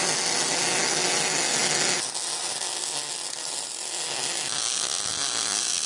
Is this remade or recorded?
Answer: recorded